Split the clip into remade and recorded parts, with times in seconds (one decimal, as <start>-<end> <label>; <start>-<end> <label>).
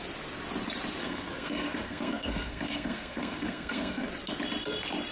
0.0-1.0 recorded; 1.0-4.1 remade; 4.1-5.1 recorded